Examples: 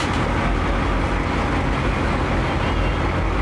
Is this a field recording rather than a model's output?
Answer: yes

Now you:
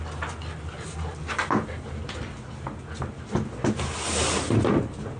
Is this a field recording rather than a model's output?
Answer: yes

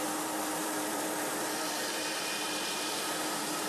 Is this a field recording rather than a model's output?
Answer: no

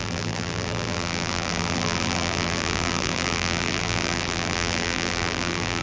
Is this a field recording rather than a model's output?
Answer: no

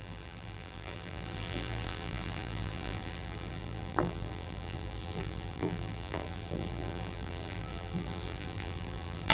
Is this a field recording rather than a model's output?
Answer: no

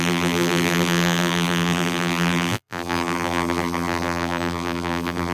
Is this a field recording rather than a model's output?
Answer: no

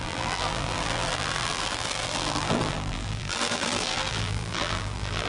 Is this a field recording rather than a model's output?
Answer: no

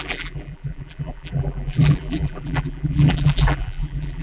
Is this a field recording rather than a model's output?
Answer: no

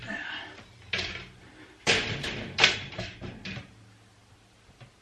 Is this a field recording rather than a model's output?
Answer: no